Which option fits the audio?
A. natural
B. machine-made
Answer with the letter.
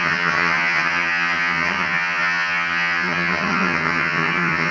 B